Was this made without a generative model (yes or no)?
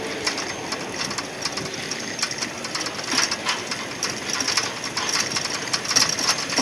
yes